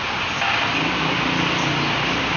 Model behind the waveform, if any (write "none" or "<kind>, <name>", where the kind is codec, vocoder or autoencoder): none